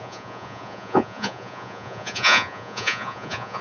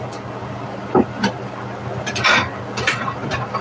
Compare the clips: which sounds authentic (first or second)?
second